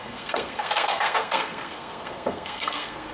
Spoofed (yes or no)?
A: yes